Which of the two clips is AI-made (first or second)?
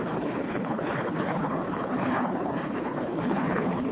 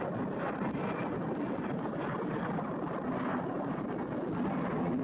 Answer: first